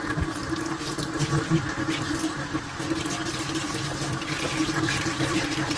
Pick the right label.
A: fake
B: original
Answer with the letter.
B